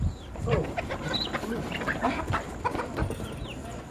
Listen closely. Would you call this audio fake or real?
fake